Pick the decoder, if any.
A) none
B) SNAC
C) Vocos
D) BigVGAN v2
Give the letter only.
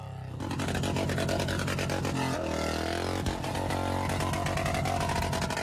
A